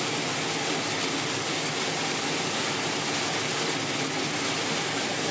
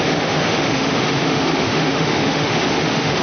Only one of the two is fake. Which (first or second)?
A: second